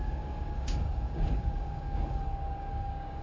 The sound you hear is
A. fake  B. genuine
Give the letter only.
A